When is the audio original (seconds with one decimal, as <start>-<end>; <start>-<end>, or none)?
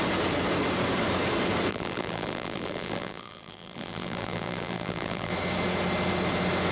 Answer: 0.0-1.7; 5.3-6.7